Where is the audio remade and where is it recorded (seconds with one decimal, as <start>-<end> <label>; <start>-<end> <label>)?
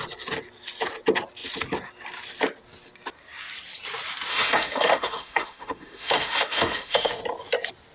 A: 0.0-4.3 recorded; 4.3-7.2 remade; 7.2-7.9 recorded